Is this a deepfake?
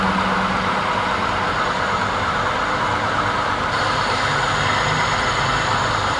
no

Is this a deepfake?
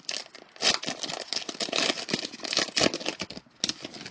no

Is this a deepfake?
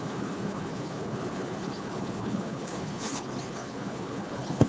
yes